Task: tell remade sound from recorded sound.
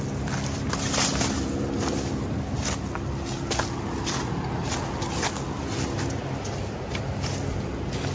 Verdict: recorded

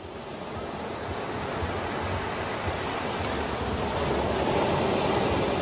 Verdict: recorded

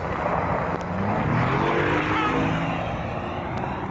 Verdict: recorded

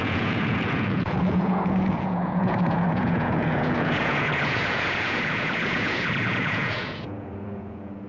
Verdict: remade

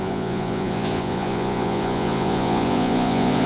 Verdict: remade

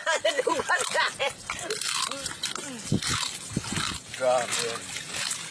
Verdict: recorded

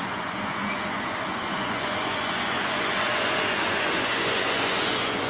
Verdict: remade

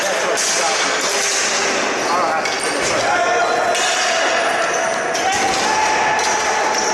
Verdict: recorded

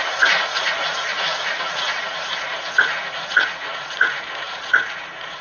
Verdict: remade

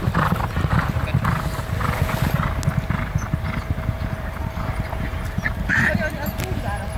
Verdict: recorded